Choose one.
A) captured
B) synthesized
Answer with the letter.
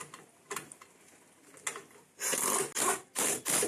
A